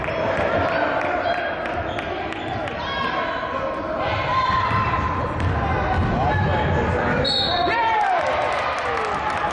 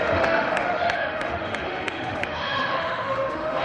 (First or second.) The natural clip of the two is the first